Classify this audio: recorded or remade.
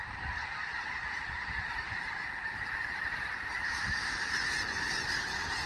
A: remade